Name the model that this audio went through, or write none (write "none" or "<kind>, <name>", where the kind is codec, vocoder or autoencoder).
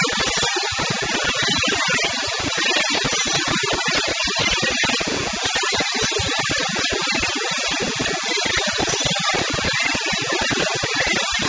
none